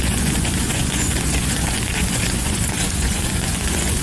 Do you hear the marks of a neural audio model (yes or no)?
yes